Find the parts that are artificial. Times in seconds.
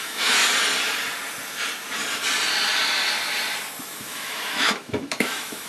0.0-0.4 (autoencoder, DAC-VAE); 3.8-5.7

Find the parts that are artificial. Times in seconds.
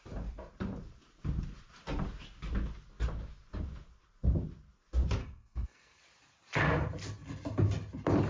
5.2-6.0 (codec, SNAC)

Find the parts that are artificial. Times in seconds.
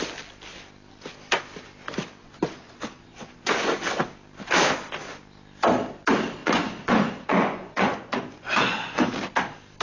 2.2-4.0 (vocoder, Vocos); 6.4-9.1